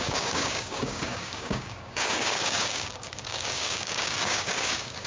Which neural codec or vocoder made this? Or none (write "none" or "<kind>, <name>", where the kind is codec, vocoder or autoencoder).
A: codec, DAC